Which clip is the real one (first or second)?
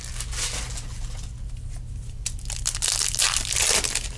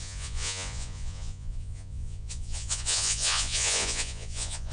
first